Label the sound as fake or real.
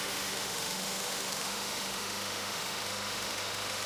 fake